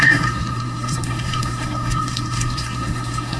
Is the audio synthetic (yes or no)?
yes